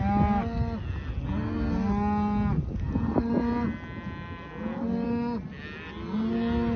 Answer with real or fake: real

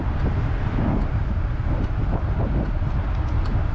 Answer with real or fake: real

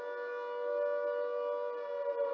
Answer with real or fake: real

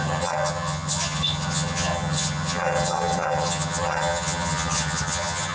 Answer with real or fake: fake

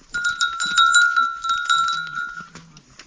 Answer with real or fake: real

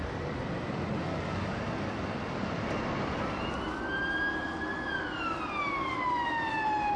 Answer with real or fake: real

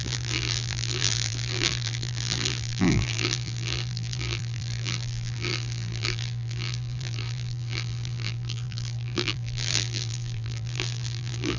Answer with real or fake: fake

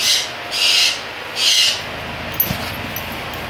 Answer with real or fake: real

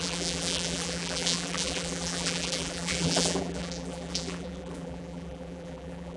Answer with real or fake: fake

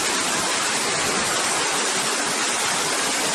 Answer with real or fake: real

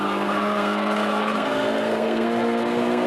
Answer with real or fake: fake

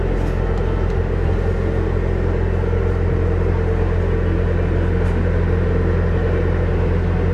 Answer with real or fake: real